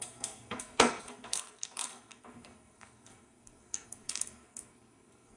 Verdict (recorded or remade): remade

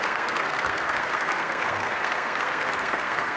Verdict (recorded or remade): remade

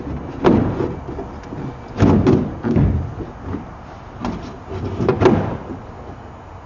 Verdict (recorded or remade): recorded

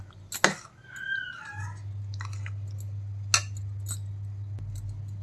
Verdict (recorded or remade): recorded